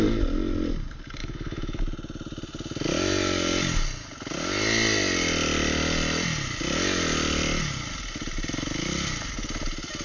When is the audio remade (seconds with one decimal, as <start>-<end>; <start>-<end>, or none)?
1.2-1.8